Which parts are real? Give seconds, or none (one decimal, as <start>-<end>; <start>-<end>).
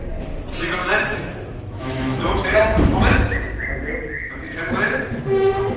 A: 0.0-0.8; 3.0-4.2; 4.7-5.8